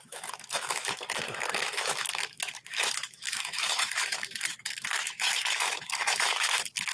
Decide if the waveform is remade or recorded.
remade